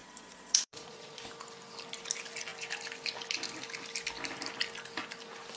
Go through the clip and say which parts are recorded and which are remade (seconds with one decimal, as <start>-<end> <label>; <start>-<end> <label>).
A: 0.0-1.2 remade; 1.2-5.6 recorded